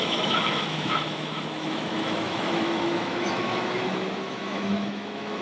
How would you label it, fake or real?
fake